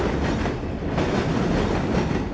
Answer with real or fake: real